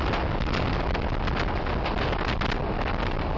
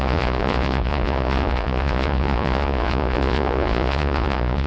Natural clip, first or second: first